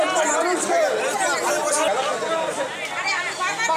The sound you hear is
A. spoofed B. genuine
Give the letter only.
B